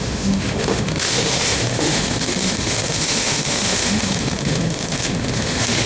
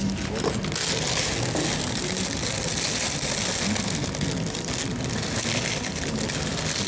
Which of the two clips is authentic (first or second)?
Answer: second